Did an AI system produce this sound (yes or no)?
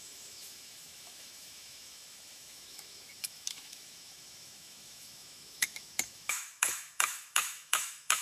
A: yes